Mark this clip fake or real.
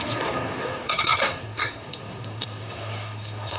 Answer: fake